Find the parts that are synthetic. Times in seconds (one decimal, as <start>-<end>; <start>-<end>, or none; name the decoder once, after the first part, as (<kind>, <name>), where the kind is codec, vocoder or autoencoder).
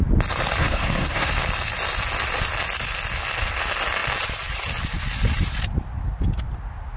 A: 0.6-1.3 (codec, SNAC)